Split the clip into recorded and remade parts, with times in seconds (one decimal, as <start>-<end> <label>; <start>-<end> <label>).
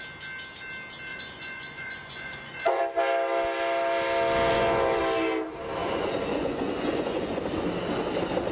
0.0-1.1 recorded; 1.1-2.8 remade; 2.8-4.5 recorded; 4.5-5.0 remade; 5.0-5.8 recorded; 5.8-7.4 remade; 7.4-8.5 recorded